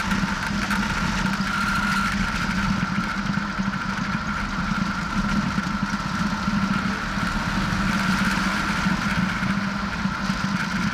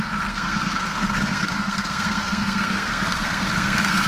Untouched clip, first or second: first